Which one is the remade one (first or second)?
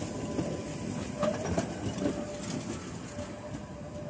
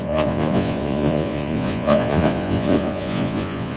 second